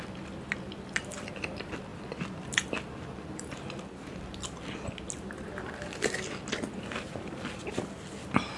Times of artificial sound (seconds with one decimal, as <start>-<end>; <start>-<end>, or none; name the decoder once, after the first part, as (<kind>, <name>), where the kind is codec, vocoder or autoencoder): none